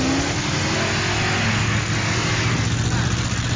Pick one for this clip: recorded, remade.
recorded